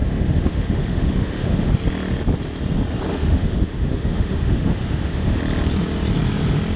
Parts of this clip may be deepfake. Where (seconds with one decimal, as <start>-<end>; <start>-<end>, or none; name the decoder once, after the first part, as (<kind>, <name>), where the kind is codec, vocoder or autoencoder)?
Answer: 0.0-1.7 (autoencoder, DAC-VAE); 3.1-5.4